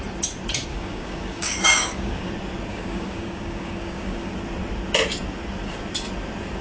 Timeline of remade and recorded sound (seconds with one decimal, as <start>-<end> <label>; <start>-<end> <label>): 0.0-0.7 recorded; 0.7-2.3 remade; 2.3-2.7 recorded; 2.7-4.3 remade; 4.3-6.6 recorded